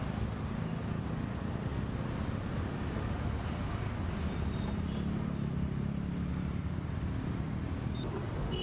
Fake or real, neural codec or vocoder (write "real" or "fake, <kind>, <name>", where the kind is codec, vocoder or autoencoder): real